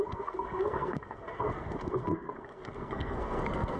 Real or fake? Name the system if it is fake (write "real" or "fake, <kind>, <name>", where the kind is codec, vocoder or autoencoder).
fake, codec, SNAC